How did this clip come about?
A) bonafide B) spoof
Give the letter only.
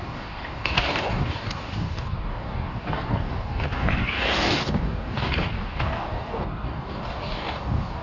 B